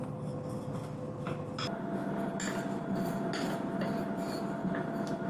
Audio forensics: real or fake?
real